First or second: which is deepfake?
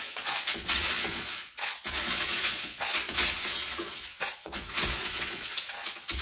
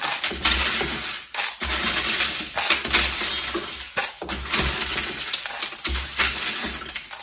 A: first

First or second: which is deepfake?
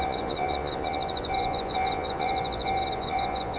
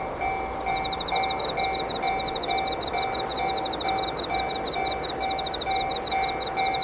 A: first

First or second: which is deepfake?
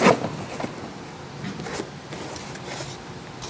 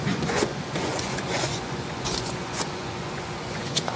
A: second